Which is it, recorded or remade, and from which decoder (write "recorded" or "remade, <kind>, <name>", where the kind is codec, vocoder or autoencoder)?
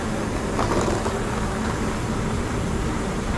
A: recorded